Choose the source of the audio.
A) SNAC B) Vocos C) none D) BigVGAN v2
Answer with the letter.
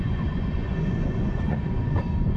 B